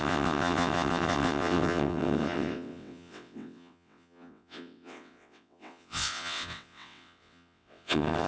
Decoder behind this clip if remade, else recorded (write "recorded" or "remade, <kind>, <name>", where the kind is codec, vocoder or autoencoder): remade, vocoder, WaveNeXt